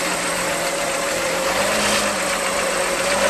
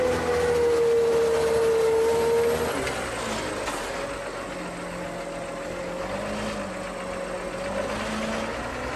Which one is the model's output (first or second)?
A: first